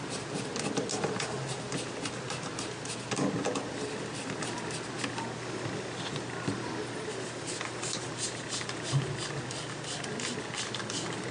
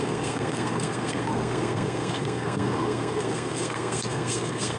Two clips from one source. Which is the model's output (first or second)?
second